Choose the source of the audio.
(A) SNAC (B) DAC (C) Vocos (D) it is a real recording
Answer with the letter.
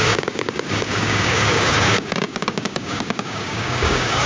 B